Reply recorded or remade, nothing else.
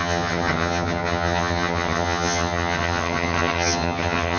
remade